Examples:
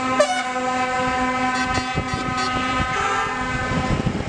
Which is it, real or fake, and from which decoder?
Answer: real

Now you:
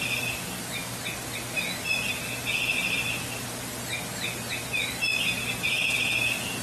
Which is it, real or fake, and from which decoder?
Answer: real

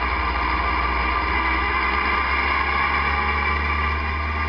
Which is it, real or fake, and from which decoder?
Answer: real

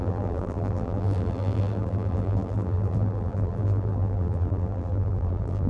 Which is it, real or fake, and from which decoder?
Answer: fake, vocoder, BigVGAN v2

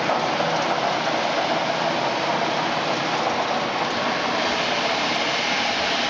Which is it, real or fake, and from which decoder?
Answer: real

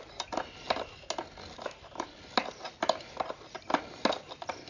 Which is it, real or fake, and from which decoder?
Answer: real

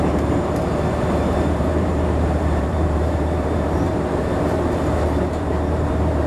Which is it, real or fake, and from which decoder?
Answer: fake, vocoder, BigVGAN v2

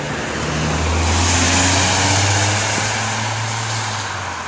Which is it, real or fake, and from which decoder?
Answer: real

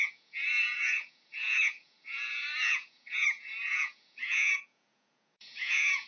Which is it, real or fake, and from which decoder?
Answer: fake, vocoder, Vocos